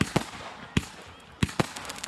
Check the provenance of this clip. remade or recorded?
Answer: recorded